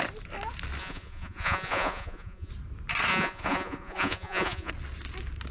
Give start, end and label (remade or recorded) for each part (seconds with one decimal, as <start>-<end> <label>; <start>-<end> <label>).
0.0-0.8 recorded; 0.8-2.5 remade; 2.5-3.1 recorded; 3.1-4.7 remade; 4.7-5.5 recorded